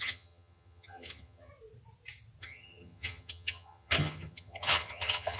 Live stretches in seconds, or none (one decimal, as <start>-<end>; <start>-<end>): 1.5-2.4